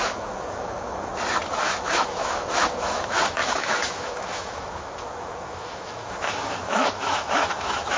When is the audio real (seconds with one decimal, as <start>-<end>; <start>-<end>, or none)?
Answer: 1.1-1.6